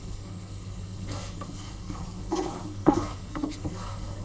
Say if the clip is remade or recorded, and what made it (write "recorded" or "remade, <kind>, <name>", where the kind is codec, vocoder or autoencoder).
remade, codec, SNAC